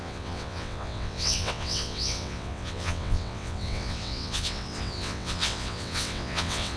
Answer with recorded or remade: remade